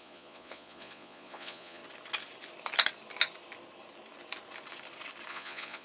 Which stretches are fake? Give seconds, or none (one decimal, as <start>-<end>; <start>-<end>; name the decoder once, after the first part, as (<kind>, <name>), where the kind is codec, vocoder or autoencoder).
0.0-1.8 (vocoder, Vocos); 5.3-5.8